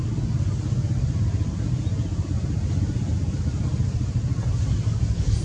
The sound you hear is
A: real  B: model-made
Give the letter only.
A